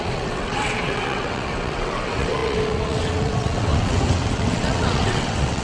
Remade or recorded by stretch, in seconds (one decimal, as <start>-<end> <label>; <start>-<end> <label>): 0.0-5.6 remade